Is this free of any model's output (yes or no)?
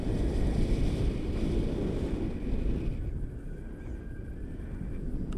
yes